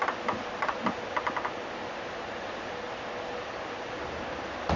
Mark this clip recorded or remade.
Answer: recorded